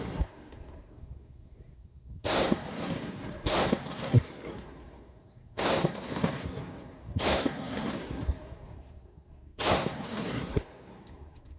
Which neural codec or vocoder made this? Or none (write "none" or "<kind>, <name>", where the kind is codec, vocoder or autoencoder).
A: codec, SNAC